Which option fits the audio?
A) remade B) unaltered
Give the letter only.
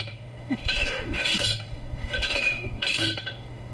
A